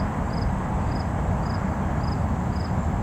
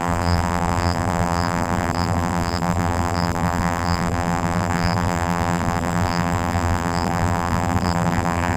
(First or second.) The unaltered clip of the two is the first